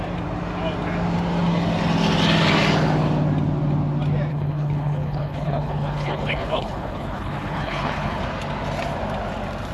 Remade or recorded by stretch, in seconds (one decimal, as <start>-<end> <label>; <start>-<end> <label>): 0.0-4.3 recorded; 4.3-8.2 remade; 8.2-9.7 recorded